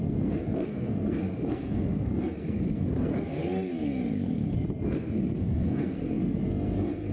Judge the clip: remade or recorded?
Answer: remade